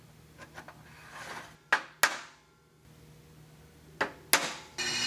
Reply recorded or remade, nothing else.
recorded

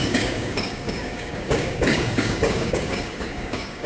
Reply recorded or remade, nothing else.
remade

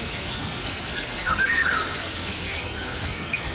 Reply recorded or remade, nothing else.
remade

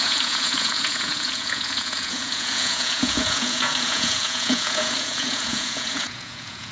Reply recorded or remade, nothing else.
remade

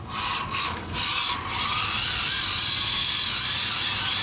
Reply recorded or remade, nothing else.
recorded